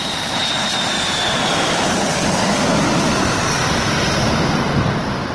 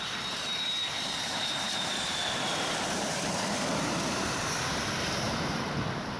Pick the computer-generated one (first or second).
second